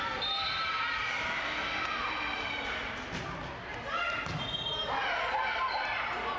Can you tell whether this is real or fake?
real